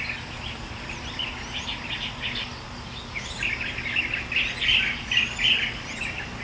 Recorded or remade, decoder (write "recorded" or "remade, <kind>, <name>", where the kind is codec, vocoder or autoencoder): recorded